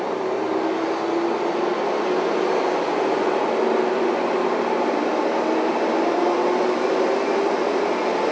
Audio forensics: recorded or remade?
recorded